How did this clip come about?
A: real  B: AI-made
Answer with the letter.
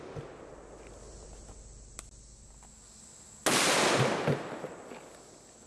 A